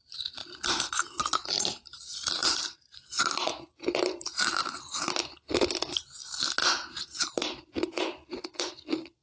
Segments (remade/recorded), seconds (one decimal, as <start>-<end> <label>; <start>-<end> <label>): 0.0-0.4 recorded; 0.4-1.2 remade; 1.2-2.4 recorded; 2.4-4.6 remade; 4.6-6.6 recorded; 6.6-8.6 remade; 8.6-9.2 recorded